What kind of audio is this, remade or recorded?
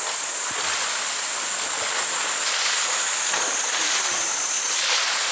recorded